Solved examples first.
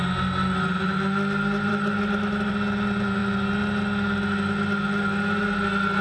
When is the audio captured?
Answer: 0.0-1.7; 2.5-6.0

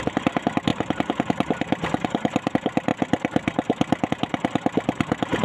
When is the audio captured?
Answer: 0.0-0.7; 2.5-5.4

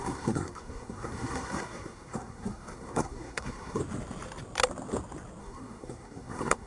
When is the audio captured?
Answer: 3.8-5.4

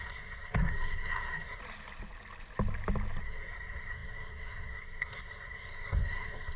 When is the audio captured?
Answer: 1.6-3.2